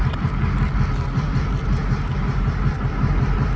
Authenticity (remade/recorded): recorded